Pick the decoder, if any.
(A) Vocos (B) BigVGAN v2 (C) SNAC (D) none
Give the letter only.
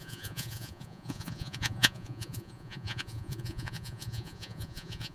A